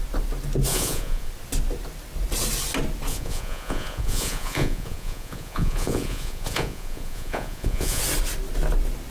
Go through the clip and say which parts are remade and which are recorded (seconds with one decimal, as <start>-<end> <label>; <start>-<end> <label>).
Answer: 0.0-0.7 recorded; 0.7-1.3 remade; 1.3-3.1 recorded; 3.1-8.0 remade; 8.0-9.1 recorded